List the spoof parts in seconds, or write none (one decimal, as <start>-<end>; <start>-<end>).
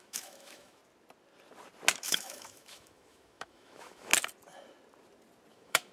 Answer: 0.0-0.8; 2.0-4.1; 5.5-5.9